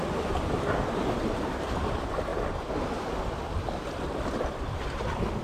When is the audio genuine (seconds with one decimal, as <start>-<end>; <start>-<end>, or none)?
0.0-5.4